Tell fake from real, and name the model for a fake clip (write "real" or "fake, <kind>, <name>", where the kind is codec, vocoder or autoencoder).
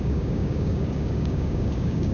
fake, codec, DAC